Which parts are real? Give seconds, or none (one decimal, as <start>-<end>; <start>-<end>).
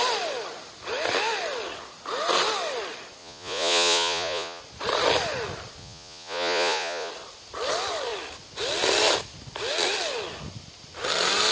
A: 0.0-3.2; 4.6-5.8; 7.1-11.5